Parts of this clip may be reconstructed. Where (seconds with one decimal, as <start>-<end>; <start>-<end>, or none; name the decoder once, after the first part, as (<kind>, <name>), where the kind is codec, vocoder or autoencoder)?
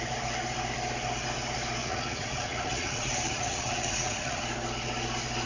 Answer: 1.8-4.4 (vocoder, Vocos)